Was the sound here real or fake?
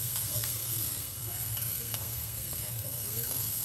fake